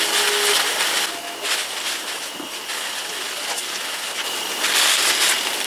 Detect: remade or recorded recorded